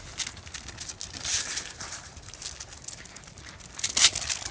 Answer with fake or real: real